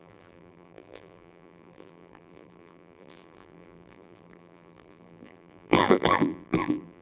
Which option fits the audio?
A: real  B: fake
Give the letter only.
B